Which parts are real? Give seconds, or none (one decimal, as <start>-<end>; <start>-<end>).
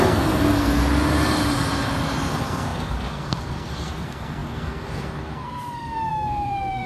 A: 0.8-2.3